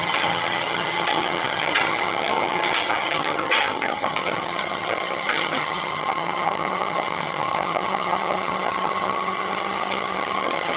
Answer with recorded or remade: remade